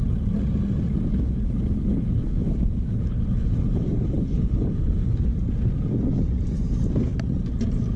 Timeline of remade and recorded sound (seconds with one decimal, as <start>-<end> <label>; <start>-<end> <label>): 0.0-1.1 recorded; 1.1-5.3 remade; 5.3-8.0 recorded

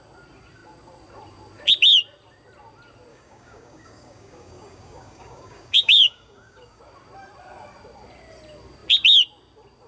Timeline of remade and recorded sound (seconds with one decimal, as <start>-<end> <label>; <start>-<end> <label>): 0.0-3.1 recorded; 3.1-6.8 remade; 6.8-9.9 recorded

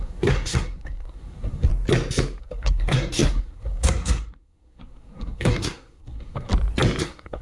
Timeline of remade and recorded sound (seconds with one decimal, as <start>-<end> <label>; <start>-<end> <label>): 0.0-1.7 remade; 1.7-2.4 recorded; 2.4-6.5 remade; 6.5-7.0 recorded; 7.0-7.4 remade

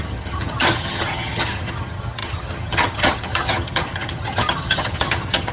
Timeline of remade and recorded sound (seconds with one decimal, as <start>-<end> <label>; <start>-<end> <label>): 0.0-5.5 remade

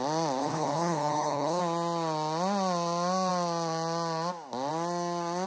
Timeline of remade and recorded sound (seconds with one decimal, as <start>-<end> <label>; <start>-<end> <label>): 0.0-0.4 recorded; 0.4-1.6 remade; 1.6-5.5 recorded

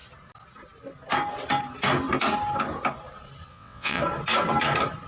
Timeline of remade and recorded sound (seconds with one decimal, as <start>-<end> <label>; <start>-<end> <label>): 0.0-3.5 recorded; 3.5-4.0 remade; 4.0-5.1 recorded